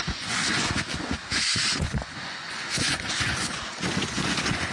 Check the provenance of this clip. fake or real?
fake